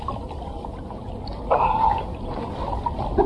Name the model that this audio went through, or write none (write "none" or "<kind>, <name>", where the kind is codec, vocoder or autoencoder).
none